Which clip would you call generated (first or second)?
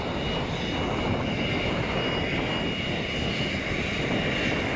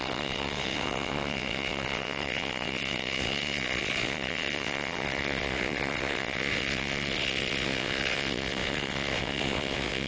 second